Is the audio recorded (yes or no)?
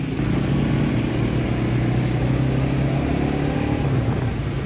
yes